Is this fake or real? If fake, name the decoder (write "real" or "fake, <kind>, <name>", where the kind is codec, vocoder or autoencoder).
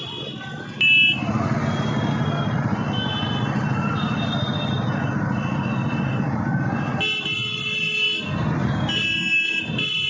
real